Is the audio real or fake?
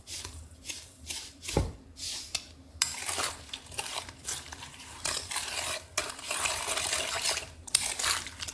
fake